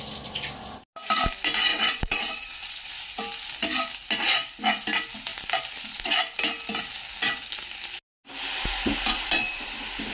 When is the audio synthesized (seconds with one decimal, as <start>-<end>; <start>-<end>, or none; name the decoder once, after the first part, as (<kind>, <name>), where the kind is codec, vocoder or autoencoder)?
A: 1.7-2.9 (vocoder, WaveNeXt)